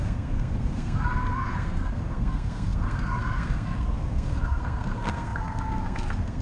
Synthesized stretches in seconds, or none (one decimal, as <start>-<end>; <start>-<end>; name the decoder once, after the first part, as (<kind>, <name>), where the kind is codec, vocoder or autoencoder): 0.0-6.4 (codec, SNAC)